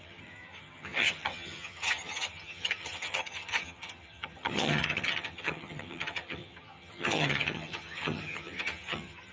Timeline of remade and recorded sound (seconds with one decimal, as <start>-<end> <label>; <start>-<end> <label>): 0.0-9.3 remade